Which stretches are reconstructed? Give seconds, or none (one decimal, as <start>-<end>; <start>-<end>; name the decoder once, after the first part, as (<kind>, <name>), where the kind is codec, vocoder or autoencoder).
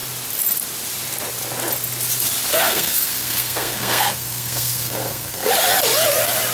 2.5-5.5 (codec, SNAC)